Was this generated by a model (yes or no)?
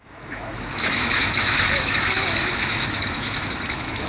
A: yes